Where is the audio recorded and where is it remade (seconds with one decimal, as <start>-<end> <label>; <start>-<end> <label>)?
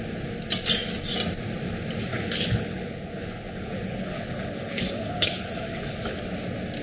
0.0-2.1 recorded; 2.1-6.2 remade; 6.2-6.8 recorded